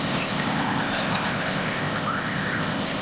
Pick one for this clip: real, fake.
fake